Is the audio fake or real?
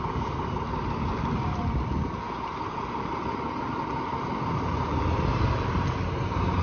real